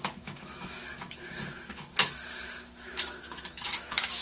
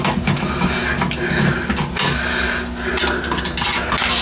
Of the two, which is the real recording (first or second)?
second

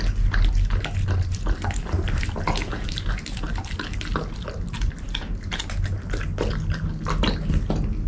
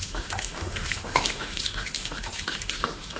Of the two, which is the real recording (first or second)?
first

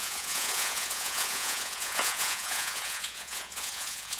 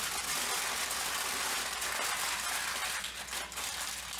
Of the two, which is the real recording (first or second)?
second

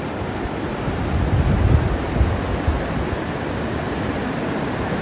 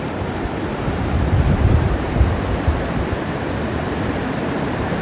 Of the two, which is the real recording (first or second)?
first